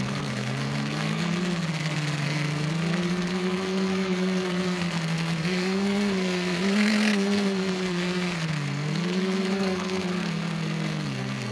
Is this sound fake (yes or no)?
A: yes